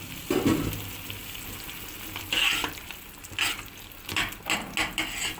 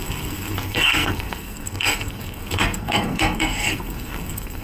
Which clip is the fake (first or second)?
second